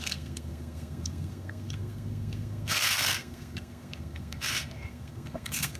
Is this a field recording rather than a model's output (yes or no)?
no